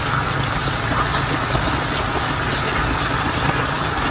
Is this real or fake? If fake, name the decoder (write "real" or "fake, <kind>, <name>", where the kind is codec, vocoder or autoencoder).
real